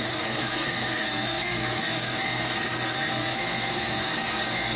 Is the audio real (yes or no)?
no